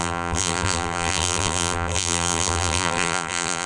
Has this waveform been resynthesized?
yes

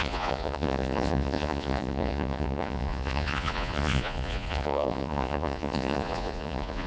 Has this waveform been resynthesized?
yes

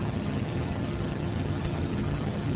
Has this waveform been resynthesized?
yes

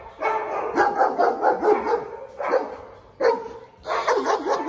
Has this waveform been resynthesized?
no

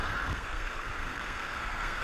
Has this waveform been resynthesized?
yes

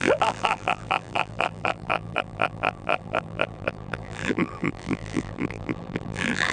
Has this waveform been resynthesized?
yes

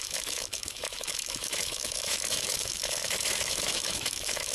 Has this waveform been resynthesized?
yes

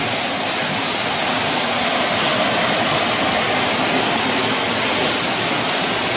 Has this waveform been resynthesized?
no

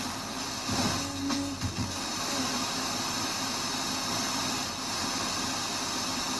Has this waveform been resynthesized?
no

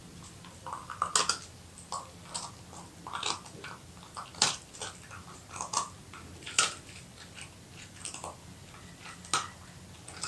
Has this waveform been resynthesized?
no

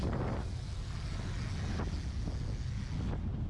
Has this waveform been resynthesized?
no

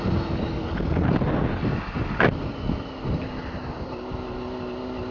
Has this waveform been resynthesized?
no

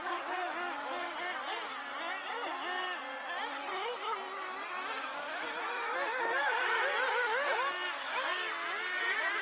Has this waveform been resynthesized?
no